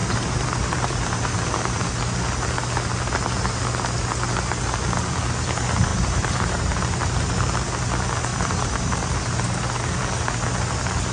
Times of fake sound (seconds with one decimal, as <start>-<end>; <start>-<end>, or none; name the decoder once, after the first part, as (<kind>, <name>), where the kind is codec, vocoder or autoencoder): 0.0-1.9 (vocoder, BigVGAN v2); 5.9-6.8; 8.3-9.2